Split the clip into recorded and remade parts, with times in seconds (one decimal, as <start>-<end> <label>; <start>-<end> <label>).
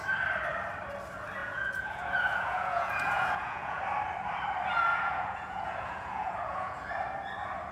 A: 0.0-1.4 recorded; 1.4-3.8 remade; 3.8-4.9 recorded; 4.9-6.9 remade; 6.9-7.7 recorded